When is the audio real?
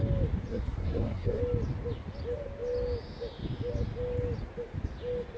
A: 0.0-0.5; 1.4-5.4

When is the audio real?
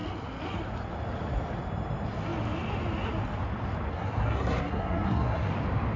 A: 0.0-3.9; 5.5-6.0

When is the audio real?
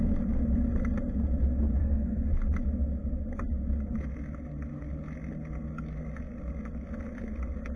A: 0.0-1.8; 2.3-7.8